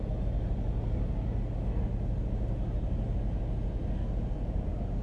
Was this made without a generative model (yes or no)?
yes